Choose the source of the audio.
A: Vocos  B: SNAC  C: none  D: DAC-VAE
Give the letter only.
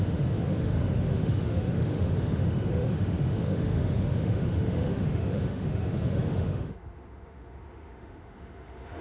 D